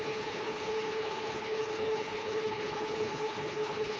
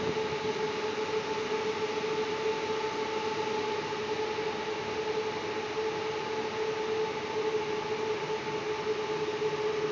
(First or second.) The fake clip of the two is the first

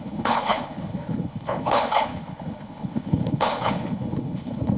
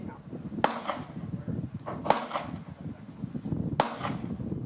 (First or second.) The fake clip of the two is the first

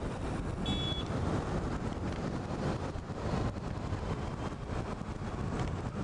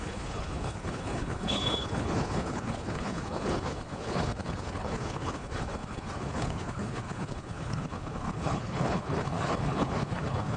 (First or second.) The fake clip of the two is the second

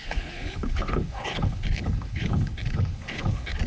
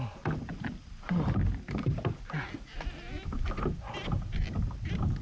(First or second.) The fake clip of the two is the first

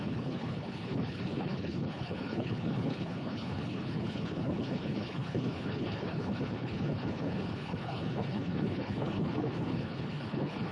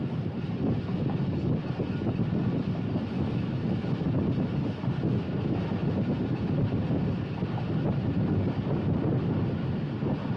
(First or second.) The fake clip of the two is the first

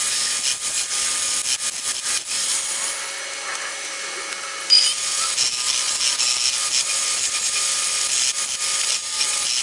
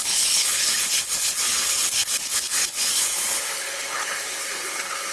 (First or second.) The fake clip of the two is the second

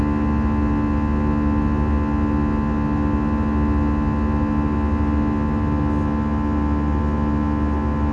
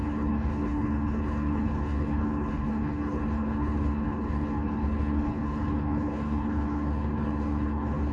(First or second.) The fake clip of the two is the second